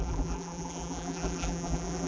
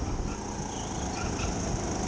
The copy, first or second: first